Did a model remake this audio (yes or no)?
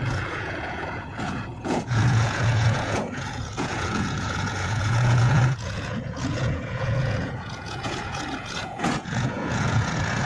yes